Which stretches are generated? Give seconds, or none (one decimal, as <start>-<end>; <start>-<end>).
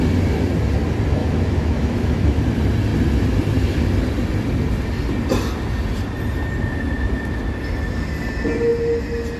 1.2-2.4